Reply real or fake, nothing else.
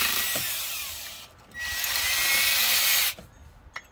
real